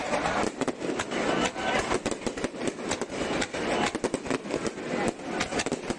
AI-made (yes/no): no